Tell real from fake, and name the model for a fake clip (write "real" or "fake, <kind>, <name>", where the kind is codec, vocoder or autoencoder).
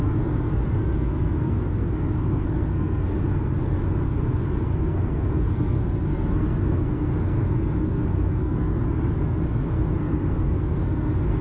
fake, codec, SNAC